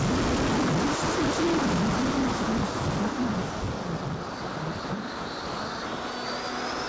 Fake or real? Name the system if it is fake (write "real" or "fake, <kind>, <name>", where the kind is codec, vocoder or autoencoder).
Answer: real